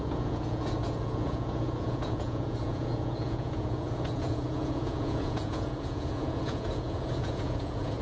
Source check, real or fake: fake